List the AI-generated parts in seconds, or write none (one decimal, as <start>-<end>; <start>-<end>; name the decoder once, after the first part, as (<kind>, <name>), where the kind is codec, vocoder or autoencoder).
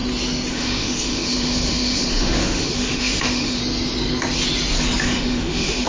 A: 0.5-3.6 (autoencoder, DAC-VAE); 5.0-5.9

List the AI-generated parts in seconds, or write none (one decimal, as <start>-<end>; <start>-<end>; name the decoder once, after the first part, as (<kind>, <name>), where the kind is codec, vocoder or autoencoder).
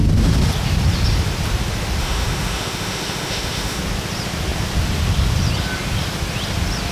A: 2.0-3.8 (autoencoder, DAC-VAE)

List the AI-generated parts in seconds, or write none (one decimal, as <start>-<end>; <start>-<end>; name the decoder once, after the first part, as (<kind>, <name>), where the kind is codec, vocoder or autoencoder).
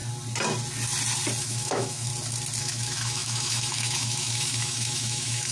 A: 1.4-2.1 (autoencoder, DAC-VAE); 2.6-5.5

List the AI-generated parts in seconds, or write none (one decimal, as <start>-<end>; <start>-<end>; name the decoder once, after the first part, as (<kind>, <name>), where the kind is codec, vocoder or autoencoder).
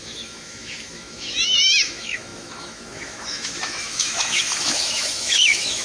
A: 0.0-5.8 (autoencoder, DAC-VAE)